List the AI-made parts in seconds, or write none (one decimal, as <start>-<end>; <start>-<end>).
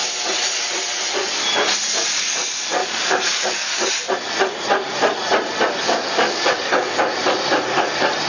2.8-3.9; 5.8-7.0